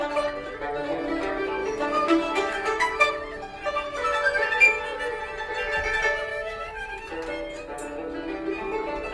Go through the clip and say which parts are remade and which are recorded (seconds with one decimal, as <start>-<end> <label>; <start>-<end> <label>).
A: 0.0-1.6 recorded; 1.6-3.1 remade; 3.1-6.3 recorded; 6.3-7.0 remade; 7.0-9.1 recorded